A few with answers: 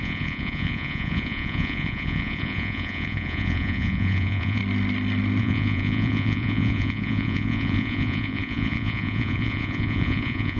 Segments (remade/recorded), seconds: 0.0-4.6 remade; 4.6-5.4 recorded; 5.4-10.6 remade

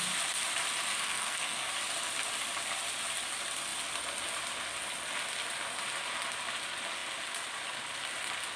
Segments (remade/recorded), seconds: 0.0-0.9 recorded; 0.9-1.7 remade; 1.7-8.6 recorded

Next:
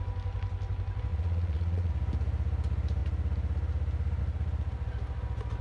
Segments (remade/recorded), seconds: 0.0-1.1 recorded; 1.1-1.9 remade; 1.9-5.6 recorded

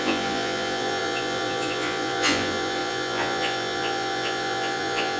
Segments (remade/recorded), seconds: 0.0-5.2 remade

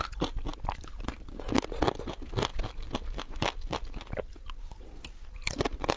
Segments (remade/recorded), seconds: 0.0-6.0 recorded

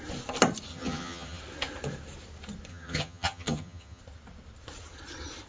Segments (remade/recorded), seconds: 0.0-0.7 recorded; 0.7-1.4 remade; 1.4-2.7 recorded; 2.7-4.0 remade; 4.0-5.5 recorded